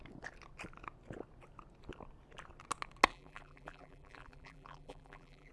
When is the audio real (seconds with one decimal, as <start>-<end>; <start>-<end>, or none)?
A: 0.0-3.1